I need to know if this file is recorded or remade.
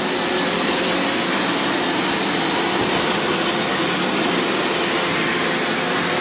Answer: recorded